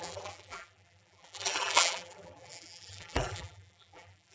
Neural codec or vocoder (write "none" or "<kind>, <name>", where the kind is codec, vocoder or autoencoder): vocoder, BigVGAN v2